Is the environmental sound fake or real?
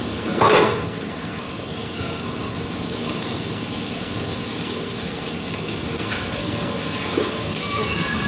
fake